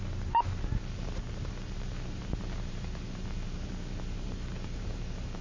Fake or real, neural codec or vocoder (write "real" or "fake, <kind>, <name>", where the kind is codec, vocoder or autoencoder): fake, vocoder, BigVGAN v2